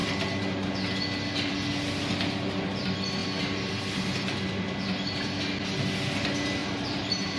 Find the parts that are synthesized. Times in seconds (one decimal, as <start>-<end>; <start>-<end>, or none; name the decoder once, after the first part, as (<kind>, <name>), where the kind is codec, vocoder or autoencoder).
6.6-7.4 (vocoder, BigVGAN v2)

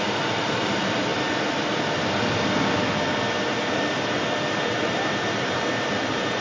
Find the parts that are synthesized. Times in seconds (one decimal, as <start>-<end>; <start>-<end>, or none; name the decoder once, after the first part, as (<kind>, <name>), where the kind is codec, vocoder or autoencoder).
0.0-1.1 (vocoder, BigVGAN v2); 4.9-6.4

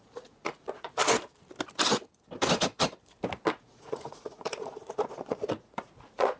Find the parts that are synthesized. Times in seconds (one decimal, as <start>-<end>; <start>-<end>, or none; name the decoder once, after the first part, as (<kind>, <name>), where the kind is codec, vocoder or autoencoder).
0.0-1.0 (vocoder, Vocos); 3.5-6.4

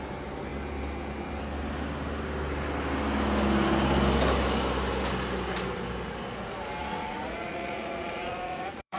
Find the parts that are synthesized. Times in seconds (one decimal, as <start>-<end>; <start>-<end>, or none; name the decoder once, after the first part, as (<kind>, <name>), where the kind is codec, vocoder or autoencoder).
6.8-9.0 (vocoder, Vocos)

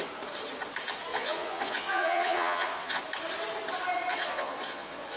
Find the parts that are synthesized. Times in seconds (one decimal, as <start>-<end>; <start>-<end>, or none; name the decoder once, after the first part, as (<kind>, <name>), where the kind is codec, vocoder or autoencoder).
1.1-3.0 (vocoder, Vocos); 4.1-5.2

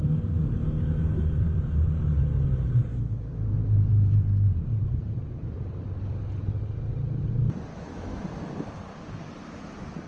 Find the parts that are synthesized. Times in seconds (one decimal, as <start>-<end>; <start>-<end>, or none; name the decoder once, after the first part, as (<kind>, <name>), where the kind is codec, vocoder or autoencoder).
2.9-3.6 (autoencoder, DAC-VAE); 7.7-8.2

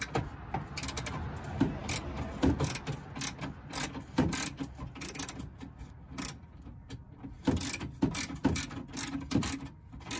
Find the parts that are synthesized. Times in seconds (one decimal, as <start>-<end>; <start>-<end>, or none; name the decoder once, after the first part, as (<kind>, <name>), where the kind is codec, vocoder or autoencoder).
none